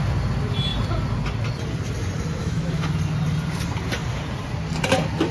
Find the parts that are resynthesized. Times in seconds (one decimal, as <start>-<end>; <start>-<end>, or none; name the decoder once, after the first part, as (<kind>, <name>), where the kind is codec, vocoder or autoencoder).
2.4-2.9 (autoencoder, DAC-VAE)